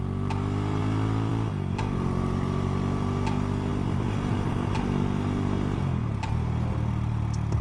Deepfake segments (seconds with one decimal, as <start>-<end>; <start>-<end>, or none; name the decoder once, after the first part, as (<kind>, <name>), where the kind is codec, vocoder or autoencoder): none